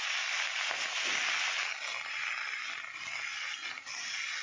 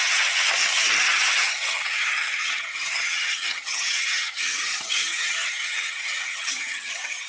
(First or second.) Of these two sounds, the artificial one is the second